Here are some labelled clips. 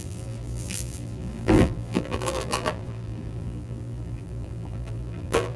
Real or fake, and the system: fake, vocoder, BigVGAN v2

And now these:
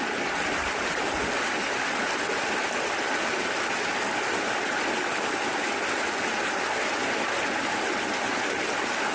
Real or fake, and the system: real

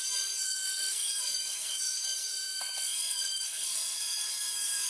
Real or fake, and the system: fake, codec, SNAC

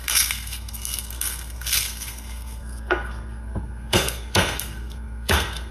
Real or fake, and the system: fake, codec, SNAC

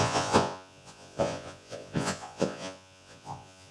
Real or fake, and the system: fake, vocoder, Vocos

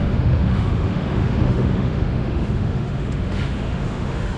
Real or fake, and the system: fake, autoencoder, DAC-VAE